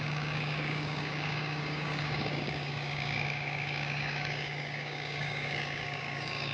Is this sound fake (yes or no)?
yes